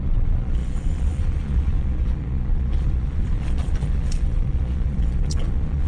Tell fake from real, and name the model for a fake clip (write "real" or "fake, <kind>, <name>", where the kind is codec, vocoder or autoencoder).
fake, vocoder, Vocos